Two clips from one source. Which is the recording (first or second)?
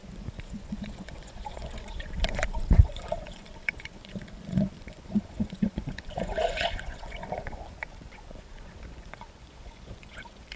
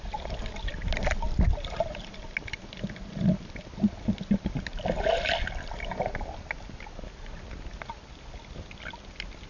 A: second